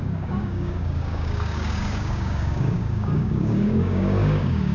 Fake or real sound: fake